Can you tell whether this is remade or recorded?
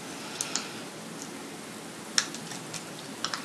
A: recorded